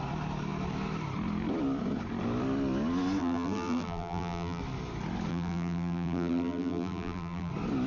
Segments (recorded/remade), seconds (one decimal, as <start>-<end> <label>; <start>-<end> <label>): 0.0-3.2 recorded; 3.2-4.6 remade; 4.6-5.3 recorded; 5.3-7.5 remade; 7.5-7.9 recorded